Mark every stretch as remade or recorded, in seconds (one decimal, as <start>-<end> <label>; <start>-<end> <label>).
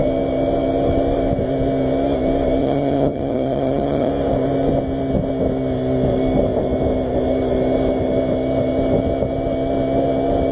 0.0-2.6 recorded; 2.6-4.1 remade; 4.1-10.5 recorded